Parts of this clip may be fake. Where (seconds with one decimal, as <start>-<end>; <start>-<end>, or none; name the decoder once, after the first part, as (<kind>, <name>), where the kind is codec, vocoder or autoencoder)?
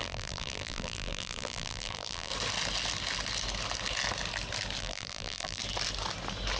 0.0-2.3 (vocoder, BigVGAN v2); 4.8-5.6